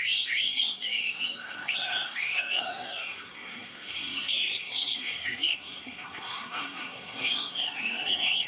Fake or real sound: fake